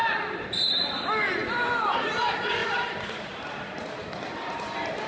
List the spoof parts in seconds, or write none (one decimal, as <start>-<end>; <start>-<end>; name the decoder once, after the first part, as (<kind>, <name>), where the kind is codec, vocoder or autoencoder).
0.5-5.1 (vocoder, BigVGAN v2)